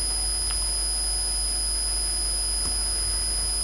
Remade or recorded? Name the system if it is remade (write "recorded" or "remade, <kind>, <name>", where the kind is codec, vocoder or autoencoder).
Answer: recorded